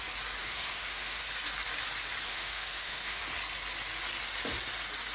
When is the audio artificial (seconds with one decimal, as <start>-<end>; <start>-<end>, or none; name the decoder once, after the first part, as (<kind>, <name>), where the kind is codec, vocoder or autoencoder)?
0.4-1.2 (autoencoder, DAC-VAE); 2.3-3.2